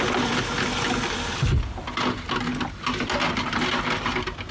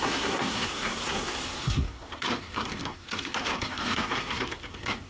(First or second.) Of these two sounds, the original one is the first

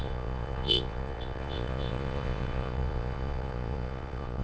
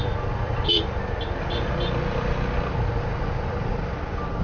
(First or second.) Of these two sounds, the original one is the second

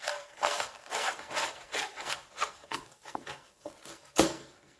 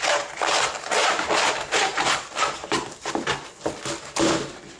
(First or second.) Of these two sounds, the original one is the second